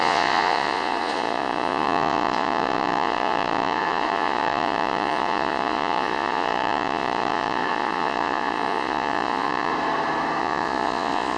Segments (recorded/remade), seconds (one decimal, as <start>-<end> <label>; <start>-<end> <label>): 0.0-9.7 remade; 9.7-10.4 recorded; 10.4-11.4 remade